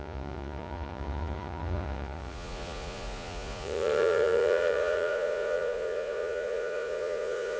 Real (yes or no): no